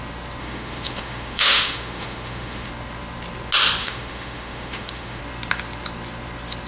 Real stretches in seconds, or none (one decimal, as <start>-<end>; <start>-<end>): 0.0-0.4; 2.7-3.8; 5.2-6.7